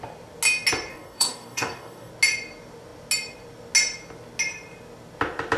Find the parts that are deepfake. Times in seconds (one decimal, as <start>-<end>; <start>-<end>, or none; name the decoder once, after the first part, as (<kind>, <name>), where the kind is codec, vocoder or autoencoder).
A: 0.9-2.1 (codec, DAC)